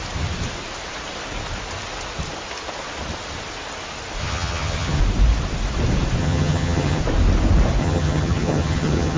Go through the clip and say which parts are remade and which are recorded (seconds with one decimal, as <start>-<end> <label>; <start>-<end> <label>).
0.0-4.2 recorded; 4.2-5.0 remade; 5.0-6.2 recorded; 6.2-7.0 remade; 7.0-7.8 recorded; 7.8-9.2 remade